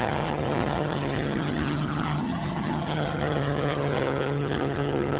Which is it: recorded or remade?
remade